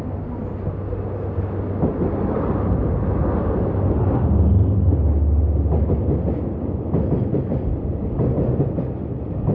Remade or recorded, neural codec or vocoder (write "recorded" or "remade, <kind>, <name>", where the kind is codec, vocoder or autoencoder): recorded